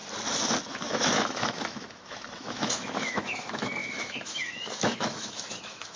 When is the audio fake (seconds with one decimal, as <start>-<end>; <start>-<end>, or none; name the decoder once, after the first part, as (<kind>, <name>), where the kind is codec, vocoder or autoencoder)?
0.6-6.0 (autoencoder, DAC-VAE)